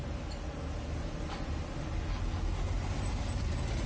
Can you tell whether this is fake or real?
real